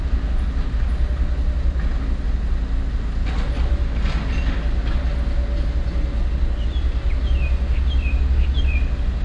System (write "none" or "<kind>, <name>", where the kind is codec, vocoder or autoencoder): none